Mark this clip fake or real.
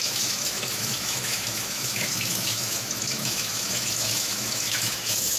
fake